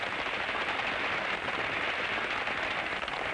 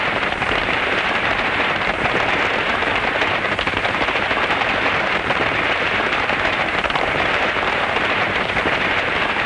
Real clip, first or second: first